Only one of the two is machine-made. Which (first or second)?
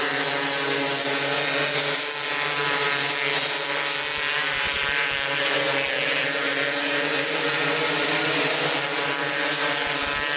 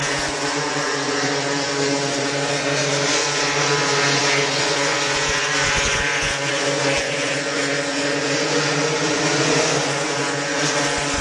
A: second